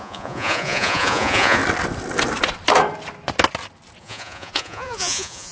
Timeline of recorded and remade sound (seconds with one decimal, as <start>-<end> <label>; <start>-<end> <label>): 0.0-1.6 remade; 1.6-4.0 recorded; 4.0-5.5 remade